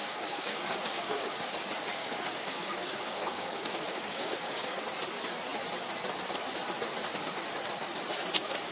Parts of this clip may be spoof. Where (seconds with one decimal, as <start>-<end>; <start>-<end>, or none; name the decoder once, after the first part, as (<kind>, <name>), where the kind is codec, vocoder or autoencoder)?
0.0-1.4 (codec, DAC); 2.0-4.8